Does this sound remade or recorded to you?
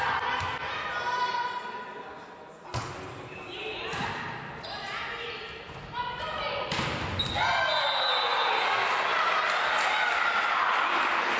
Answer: recorded